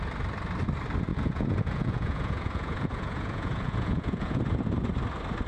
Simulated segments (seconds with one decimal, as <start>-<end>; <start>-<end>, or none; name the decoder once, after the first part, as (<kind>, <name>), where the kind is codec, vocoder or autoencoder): 1.1-4.4 (vocoder, Vocos)